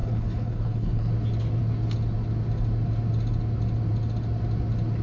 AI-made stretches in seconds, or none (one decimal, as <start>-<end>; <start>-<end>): 0.0-1.1